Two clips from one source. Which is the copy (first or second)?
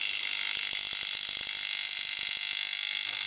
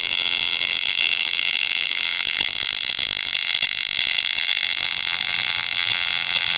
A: second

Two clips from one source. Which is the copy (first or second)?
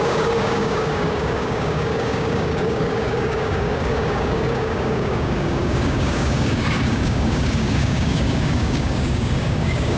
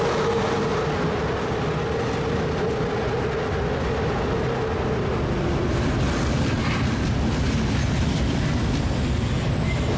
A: first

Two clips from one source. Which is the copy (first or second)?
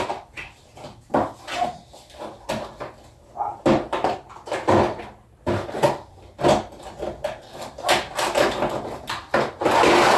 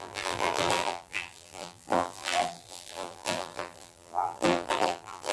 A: second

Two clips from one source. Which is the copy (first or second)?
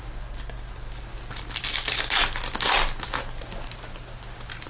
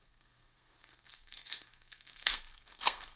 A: second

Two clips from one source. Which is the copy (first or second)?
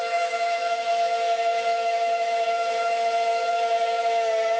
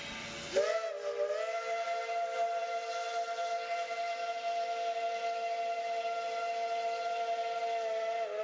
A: first